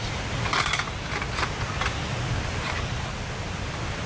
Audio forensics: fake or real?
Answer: real